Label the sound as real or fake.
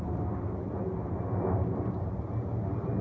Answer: real